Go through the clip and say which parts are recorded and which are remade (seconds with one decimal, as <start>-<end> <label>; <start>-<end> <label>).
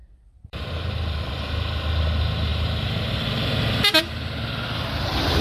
0.0-1.3 remade; 1.3-5.4 recorded